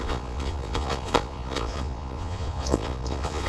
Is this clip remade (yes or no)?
yes